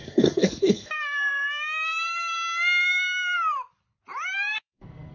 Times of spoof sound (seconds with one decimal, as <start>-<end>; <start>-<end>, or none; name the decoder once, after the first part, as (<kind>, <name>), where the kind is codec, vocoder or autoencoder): 0.0-1.5 (codec, SNAC); 4.6-5.1